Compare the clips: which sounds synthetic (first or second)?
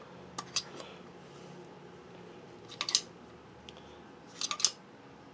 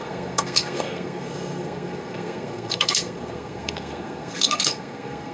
second